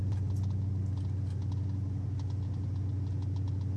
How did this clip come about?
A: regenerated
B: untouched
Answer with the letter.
B